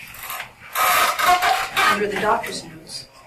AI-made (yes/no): no